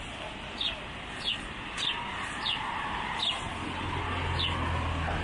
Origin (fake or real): real